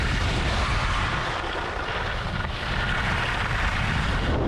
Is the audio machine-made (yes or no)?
no